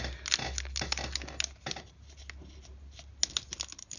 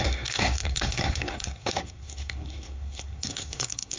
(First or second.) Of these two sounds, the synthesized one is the second